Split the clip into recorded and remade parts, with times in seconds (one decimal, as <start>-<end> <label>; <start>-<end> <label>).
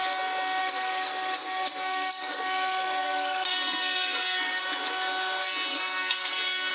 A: 0.0-0.6 recorded; 0.6-4.6 remade; 4.6-5.7 recorded; 5.7-6.7 remade